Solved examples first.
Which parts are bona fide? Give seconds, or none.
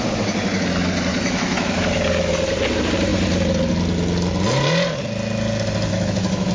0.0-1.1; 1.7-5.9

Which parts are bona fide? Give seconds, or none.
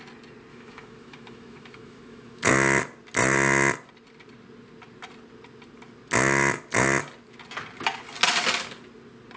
0.0-0.5; 2.5-9.4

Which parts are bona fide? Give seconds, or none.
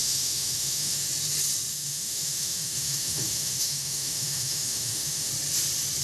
1.1-1.7; 5.3-6.0